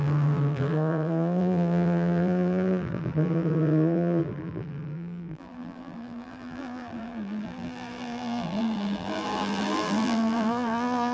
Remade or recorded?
remade